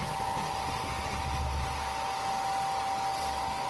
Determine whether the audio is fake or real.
real